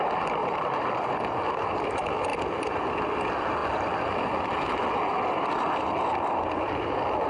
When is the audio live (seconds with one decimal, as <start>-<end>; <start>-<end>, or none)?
0.0-0.4; 0.9-7.3